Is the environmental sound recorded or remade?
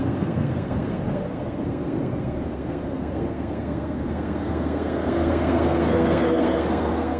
remade